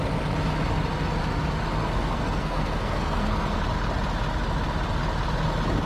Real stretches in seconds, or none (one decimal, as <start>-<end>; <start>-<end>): 0.0-1.8; 3.6-5.9